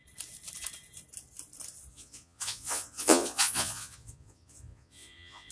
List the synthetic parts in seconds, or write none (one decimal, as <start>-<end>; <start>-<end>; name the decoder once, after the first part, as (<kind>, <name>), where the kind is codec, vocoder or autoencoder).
1.9-5.5 (vocoder, Vocos)